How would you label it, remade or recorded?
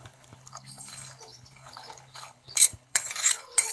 remade